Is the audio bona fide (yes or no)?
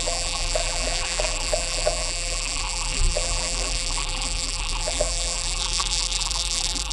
no